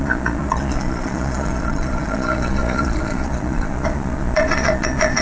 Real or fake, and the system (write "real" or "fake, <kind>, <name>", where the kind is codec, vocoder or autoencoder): fake, vocoder, Vocos